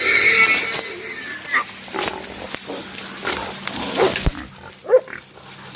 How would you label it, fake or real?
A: real